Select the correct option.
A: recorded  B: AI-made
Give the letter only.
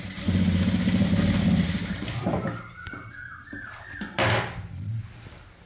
A